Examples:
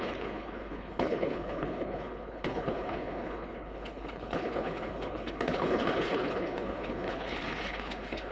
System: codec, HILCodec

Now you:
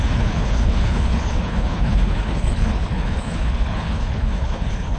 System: codec, HILCodec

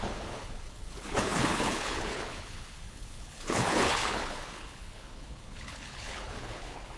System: codec, HILCodec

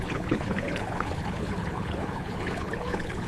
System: codec, HILCodec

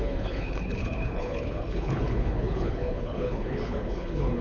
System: codec, HILCodec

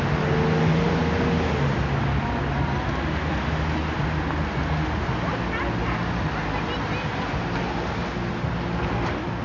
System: none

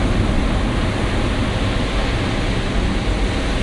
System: none